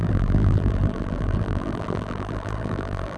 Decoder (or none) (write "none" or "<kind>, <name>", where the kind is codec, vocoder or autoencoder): vocoder, BigVGAN v2